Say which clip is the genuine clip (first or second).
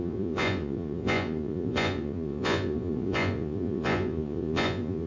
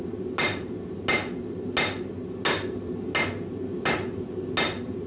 second